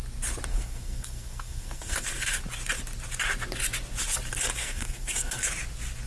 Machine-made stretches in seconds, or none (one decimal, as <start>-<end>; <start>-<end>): 0.5-2.4; 4.6-5.5